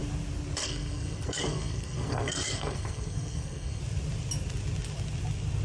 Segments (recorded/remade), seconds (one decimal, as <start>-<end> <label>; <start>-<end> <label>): 0.0-0.6 recorded; 0.6-3.8 remade; 3.8-5.6 recorded